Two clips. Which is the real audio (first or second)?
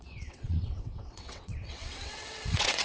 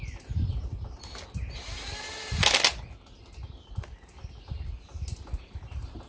second